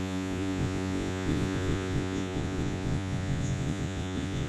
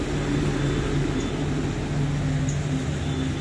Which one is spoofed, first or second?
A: first